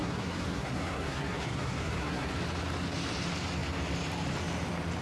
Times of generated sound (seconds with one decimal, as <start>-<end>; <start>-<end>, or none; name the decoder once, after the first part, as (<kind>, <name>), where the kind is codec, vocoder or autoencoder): 0.0-2.3 (codec, SNAC)